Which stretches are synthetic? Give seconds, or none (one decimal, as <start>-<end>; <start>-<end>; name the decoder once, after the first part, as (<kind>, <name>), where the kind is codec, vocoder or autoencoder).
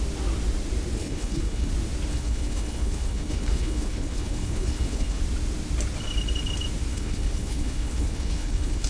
1.0-1.7 (codec, HILCodec); 2.1-5.2; 6.9-8.9